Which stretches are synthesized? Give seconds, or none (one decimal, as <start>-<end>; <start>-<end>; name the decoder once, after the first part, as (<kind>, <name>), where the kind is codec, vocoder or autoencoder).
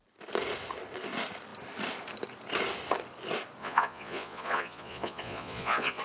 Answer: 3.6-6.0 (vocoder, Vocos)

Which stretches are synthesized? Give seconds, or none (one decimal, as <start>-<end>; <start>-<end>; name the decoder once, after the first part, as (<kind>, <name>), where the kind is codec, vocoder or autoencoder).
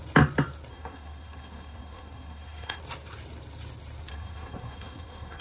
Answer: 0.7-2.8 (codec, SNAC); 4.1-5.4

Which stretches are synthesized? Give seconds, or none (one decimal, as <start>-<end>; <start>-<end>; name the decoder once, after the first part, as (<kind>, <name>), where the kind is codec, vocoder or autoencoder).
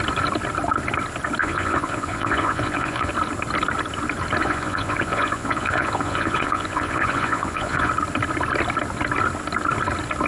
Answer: 1.4-3.1 (vocoder, Vocos); 4.4-7.9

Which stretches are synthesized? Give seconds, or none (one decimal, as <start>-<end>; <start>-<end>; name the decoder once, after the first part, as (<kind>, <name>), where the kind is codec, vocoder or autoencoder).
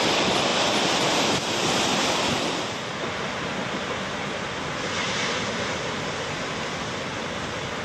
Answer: 1.9-4.6 (vocoder, BigVGAN v2)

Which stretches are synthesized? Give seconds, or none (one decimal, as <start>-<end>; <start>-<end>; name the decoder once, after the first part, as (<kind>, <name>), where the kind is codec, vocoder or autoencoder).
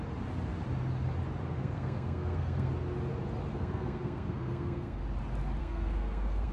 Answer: 1.5-2.7 (codec, SNAC); 3.5-5.0; 5.6-6.5